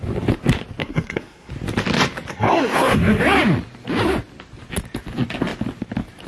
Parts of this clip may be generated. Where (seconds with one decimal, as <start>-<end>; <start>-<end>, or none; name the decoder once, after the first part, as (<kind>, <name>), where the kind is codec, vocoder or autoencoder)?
0.8-1.5 (codec, SNAC); 2.3-3.2